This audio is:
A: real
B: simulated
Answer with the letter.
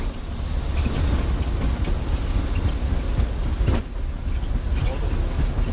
A